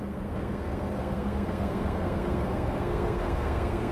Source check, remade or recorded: remade